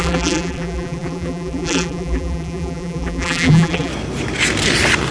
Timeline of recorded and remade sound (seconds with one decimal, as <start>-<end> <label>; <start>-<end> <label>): 0.0-3.9 remade; 3.9-5.1 recorded